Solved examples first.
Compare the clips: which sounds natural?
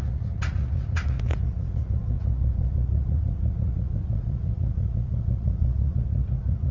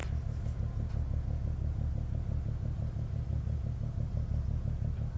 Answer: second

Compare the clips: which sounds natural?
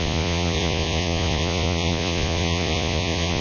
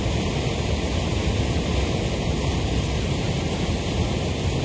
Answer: second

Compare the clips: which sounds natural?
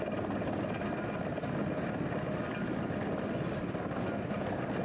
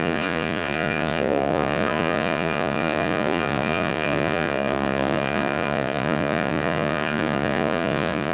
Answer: first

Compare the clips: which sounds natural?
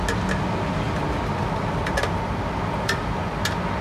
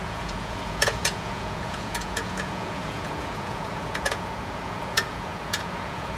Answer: first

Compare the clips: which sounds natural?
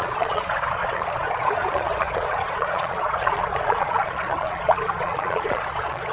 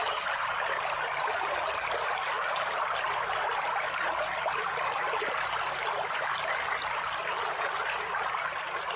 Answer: second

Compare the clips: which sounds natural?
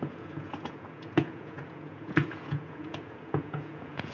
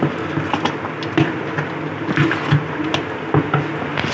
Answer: second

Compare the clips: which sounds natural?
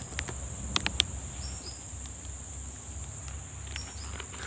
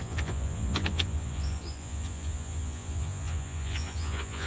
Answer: first